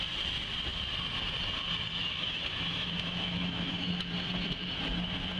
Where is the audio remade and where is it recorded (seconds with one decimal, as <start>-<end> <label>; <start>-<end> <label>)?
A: 0.0-2.0 recorded; 2.0-4.1 remade; 4.1-5.4 recorded